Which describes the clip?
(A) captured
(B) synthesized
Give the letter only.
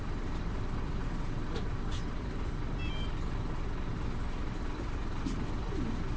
B